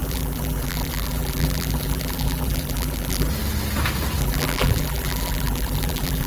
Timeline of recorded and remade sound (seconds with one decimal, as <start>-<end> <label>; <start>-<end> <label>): 0.0-3.3 remade; 3.3-4.2 recorded; 4.2-6.3 remade